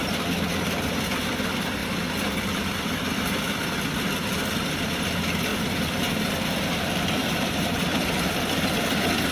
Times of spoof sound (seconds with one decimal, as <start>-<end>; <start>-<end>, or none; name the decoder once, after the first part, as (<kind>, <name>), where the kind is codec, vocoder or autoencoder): 5.5-6.3 (vocoder, BigVGAN v2); 7.2-7.8